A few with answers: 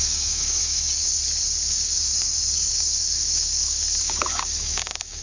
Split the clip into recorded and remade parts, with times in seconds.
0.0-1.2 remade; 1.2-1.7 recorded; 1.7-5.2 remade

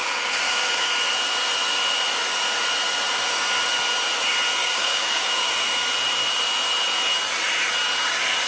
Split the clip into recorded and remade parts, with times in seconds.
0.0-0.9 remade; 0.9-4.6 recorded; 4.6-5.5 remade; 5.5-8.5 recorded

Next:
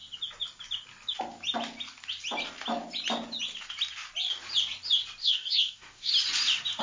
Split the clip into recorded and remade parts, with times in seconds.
0.0-5.2 recorded; 5.2-6.1 remade; 6.1-6.8 recorded